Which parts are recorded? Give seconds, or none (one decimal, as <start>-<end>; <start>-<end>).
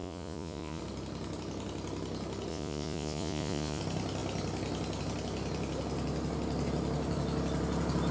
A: 0.8-2.5; 3.8-8.1